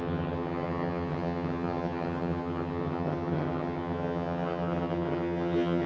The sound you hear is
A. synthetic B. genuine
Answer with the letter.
A